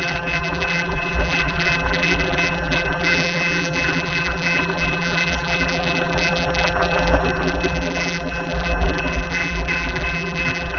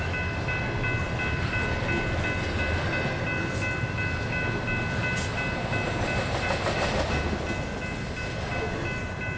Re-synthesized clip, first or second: first